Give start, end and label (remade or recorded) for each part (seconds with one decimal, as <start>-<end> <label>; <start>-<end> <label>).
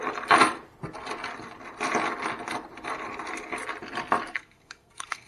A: 0.0-4.3 recorded; 4.3-5.3 remade